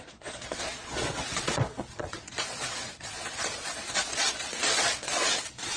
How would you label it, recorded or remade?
remade